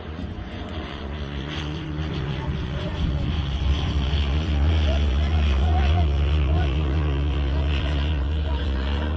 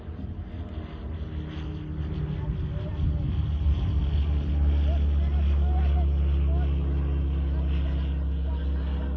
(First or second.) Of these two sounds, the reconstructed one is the first